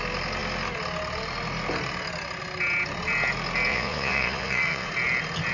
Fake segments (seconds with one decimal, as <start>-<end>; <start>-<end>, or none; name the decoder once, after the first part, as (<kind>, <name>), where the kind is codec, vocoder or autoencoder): 3.7-4.9 (vocoder, Vocos)